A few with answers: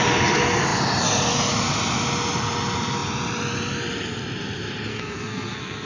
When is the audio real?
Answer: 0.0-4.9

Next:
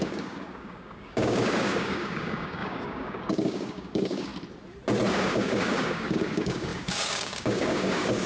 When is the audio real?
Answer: 4.3-5.1

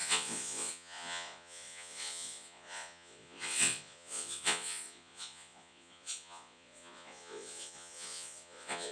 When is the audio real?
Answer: none

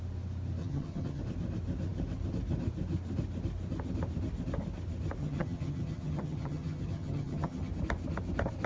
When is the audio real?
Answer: 0.0-0.6; 1.2-5.2; 7.7-8.7

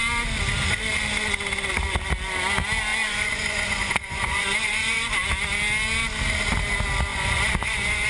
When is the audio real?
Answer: 0.0-2.9; 5.1-7.1

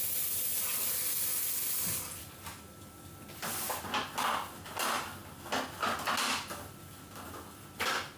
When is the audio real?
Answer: 0.0-8.2

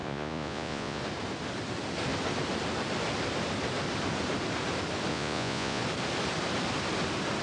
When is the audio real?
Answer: 1.0-5.1; 5.8-7.4